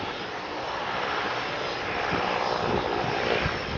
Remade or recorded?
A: remade